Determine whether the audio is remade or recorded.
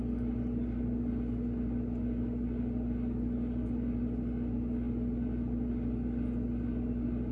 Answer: recorded